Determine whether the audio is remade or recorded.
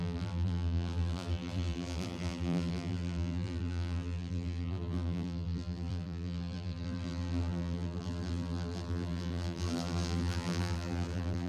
remade